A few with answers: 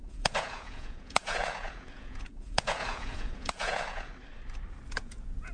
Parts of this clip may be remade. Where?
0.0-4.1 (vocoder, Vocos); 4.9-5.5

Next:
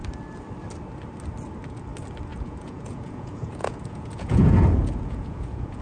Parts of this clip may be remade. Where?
2.3-5.8 (vocoder, Vocos)